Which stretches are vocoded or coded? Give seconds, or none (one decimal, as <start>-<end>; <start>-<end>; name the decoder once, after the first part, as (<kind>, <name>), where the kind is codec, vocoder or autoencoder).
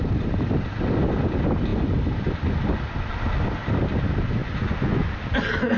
4.4-5.1 (vocoder, Vocos)